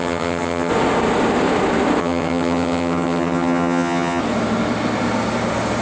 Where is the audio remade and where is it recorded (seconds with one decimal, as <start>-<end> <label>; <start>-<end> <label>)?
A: 0.0-0.7 remade; 0.7-2.0 recorded; 2.0-4.2 remade; 4.2-5.8 recorded